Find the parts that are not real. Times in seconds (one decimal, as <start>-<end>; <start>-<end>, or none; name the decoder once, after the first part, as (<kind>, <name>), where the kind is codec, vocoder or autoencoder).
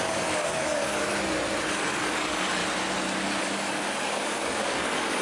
0.0-1.1 (codec, DAC); 1.7-2.6; 3.4-5.2